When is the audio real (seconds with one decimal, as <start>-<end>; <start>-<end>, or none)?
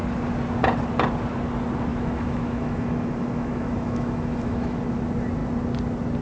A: 0.0-1.9; 4.8-6.2